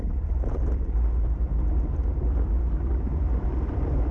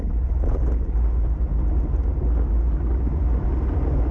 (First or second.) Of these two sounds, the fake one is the first